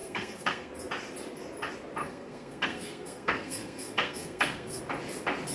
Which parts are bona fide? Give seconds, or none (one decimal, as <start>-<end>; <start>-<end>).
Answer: 0.7-2.0; 4.8-5.5